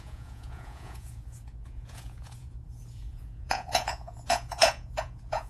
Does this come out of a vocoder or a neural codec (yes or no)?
yes